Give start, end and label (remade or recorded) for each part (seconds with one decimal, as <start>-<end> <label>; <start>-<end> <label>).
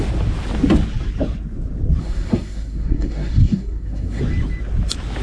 0.0-2.0 recorded; 2.0-4.2 remade; 4.2-5.2 recorded